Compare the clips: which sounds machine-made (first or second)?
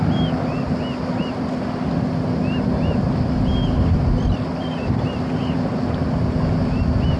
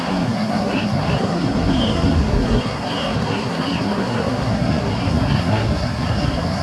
second